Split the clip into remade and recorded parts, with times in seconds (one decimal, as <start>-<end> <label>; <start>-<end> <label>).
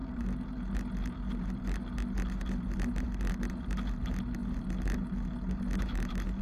0.0-6.4 recorded